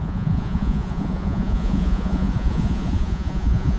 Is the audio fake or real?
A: fake